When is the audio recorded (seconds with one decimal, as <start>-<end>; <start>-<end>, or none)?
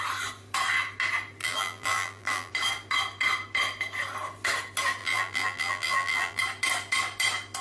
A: 0.0-1.4; 2.5-5.0; 6.4-7.6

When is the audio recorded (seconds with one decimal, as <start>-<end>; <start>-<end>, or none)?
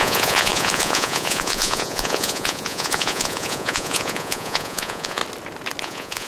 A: 5.2-5.8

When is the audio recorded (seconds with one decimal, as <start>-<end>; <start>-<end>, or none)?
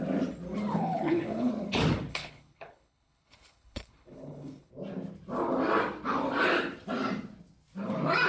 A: 0.0-0.7; 1.5-2.1; 4.7-8.3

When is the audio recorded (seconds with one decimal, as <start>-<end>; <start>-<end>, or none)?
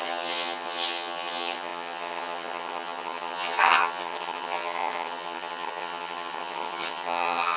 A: none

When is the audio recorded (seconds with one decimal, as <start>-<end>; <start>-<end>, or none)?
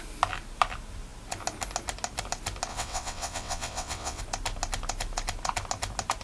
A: 0.0-2.7; 4.2-6.2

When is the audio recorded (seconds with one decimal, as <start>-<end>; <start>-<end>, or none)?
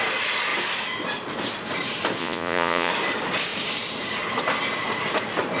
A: 0.0-2.2; 2.9-5.6